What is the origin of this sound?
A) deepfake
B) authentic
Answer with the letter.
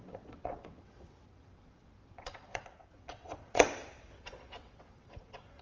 A